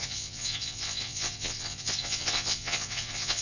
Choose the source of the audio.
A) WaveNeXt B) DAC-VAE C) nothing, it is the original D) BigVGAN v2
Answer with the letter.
A